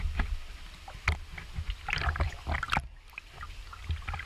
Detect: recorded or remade recorded